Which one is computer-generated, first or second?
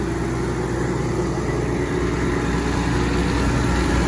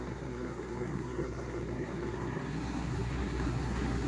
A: second